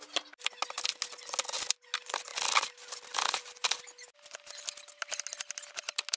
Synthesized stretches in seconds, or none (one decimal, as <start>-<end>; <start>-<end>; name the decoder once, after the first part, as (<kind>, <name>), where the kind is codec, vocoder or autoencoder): none